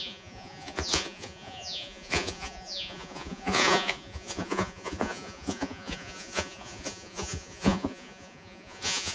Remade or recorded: remade